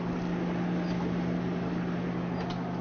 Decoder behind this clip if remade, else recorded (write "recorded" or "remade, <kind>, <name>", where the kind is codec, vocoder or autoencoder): recorded